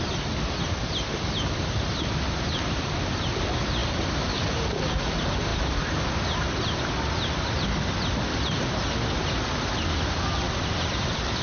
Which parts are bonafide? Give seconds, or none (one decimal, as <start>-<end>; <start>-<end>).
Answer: 0.0-11.4